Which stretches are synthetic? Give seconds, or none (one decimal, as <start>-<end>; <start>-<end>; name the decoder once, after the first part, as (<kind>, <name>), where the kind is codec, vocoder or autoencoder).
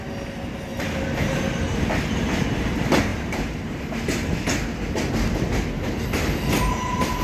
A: 0.7-1.4 (vocoder, BigVGAN v2); 3.1-3.8